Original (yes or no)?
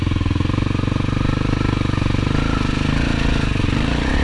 yes